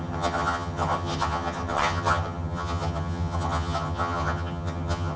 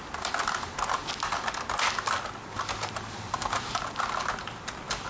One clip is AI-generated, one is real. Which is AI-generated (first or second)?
first